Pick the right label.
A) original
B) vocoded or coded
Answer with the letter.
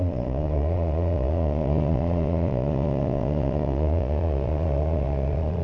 B